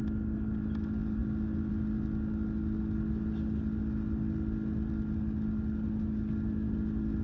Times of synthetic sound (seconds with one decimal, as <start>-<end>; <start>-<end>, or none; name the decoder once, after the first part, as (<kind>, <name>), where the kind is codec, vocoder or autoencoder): none